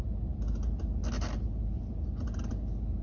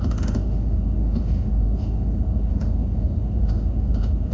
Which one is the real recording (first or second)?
first